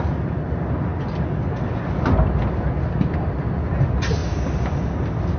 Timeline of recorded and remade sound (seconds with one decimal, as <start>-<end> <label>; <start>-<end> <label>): 0.0-5.4 recorded